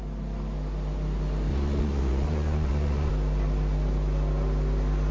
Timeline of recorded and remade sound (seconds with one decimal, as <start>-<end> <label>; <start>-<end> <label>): 0.0-1.5 recorded; 1.5-3.1 remade; 3.1-5.1 recorded